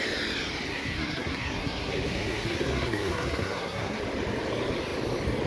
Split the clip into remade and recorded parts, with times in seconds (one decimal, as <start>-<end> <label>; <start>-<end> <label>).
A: 0.0-0.7 recorded; 0.7-4.0 remade; 4.0-5.5 recorded

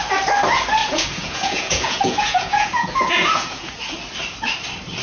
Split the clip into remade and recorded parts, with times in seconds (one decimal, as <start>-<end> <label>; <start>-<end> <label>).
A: 0.0-0.8 recorded; 0.8-3.8 remade; 3.8-5.0 recorded